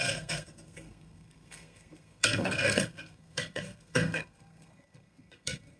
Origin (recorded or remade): remade